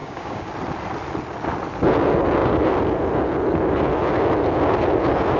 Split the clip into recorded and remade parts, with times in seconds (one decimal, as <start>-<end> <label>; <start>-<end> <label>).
0.0-0.5 remade; 0.5-5.4 recorded